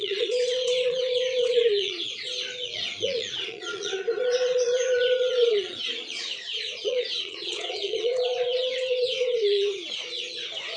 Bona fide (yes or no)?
no